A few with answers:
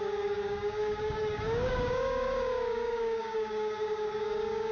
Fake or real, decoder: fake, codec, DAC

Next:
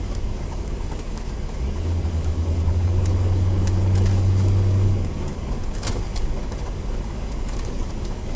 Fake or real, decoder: fake, codec, DAC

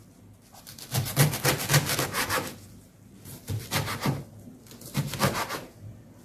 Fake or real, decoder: real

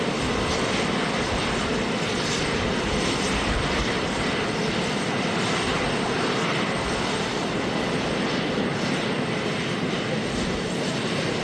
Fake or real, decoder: real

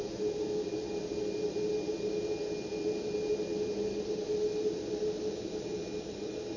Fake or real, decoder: real